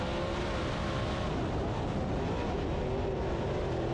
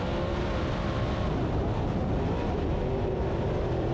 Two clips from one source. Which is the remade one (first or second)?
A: second